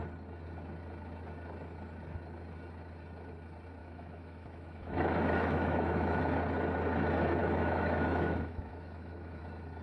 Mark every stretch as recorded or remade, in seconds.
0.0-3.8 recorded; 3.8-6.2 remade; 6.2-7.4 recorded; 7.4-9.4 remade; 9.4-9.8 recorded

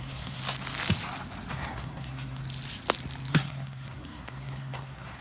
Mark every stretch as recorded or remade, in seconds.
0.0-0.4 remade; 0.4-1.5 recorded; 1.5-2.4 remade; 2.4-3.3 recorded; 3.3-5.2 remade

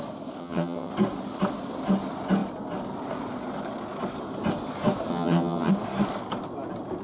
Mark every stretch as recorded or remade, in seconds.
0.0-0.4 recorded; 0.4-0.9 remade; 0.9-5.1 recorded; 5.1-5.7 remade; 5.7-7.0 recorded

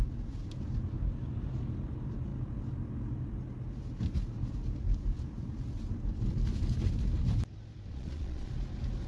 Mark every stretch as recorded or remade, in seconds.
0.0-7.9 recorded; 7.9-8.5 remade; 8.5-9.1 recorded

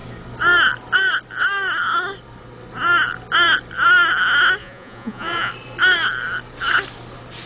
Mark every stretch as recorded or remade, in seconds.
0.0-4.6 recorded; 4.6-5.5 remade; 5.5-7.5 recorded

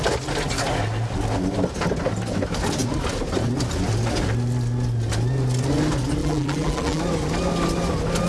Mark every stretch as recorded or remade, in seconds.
0.0-6.2 recorded; 6.2-7.0 remade; 7.0-8.3 recorded

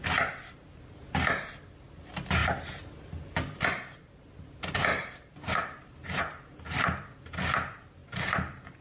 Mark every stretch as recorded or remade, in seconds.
0.0-4.9 recorded; 4.9-6.2 remade; 6.2-8.8 recorded